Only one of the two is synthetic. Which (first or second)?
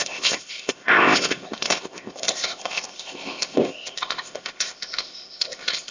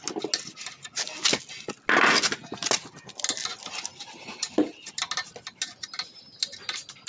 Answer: first